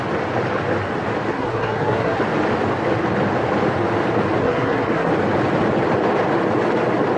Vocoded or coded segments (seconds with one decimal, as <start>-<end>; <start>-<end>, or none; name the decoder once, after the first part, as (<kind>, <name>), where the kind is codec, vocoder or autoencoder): 1.3-2.2 (codec, SNAC); 4.4-5.1